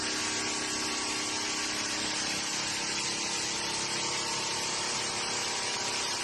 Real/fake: real